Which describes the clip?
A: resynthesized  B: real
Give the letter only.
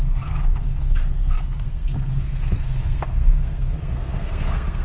A